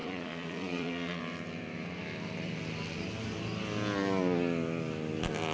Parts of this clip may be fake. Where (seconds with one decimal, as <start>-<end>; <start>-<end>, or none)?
0.0-1.2